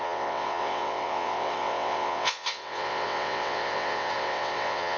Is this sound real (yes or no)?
no